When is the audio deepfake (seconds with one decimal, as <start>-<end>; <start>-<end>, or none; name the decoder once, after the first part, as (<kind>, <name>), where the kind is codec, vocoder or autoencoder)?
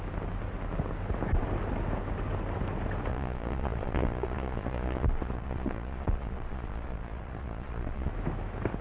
3.1-8.1 (vocoder, Vocos)